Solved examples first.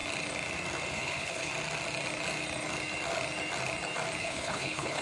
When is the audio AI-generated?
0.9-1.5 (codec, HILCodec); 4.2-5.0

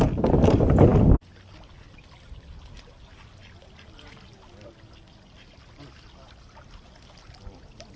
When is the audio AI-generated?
0.0-0.9 (vocoder, BigVGAN v2); 4.1-8.0

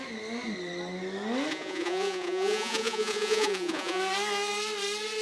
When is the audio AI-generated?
1.5-4.0 (vocoder, Vocos)

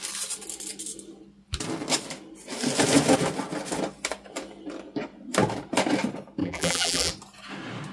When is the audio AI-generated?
6.4-7.1 (vocoder, BigVGAN v2)

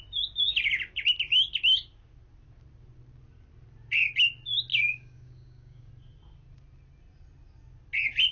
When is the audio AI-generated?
4.7-5.9 (codec, DAC)

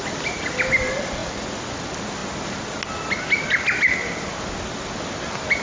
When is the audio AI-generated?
none